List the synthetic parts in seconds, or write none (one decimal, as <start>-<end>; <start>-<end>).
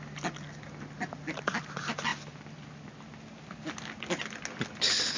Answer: none